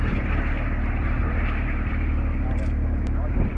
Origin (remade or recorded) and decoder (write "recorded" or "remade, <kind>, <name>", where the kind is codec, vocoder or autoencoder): remade, vocoder, BigVGAN v2